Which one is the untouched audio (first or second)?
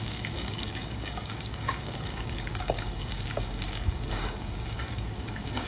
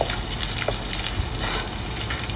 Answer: second